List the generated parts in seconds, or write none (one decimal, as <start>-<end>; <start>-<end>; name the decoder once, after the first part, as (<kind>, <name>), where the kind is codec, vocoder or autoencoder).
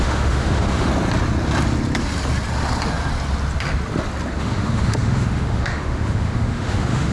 0.0-0.9 (autoencoder, DAC-VAE); 4.4-7.1